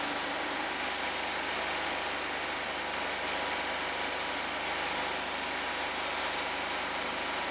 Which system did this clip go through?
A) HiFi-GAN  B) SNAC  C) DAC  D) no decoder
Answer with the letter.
D